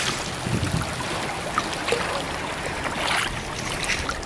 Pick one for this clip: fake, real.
real